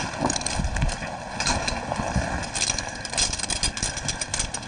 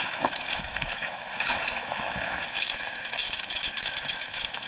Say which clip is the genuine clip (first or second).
first